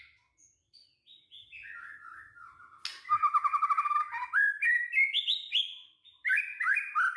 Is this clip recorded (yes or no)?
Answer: yes